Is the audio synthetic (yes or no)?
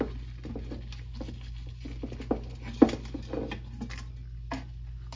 no